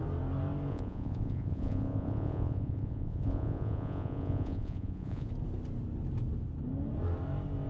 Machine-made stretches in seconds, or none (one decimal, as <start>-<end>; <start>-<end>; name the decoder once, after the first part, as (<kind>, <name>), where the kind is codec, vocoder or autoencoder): 0.7-5.3 (vocoder, Vocos)